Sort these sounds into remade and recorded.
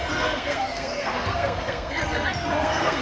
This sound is remade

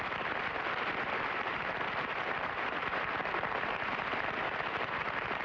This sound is remade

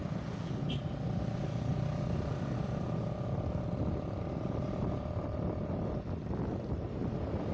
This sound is recorded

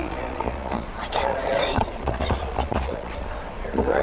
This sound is remade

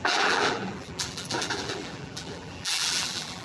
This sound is remade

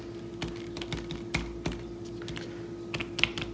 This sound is recorded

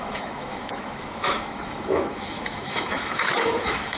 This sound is remade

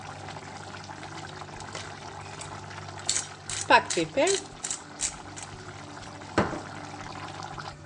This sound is recorded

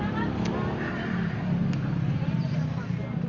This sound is recorded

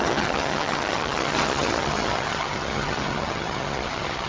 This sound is remade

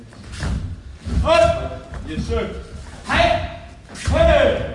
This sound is recorded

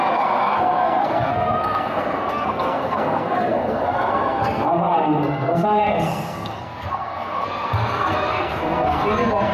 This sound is remade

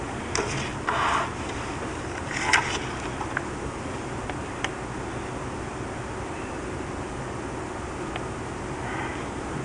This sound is recorded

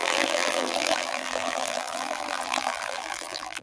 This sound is remade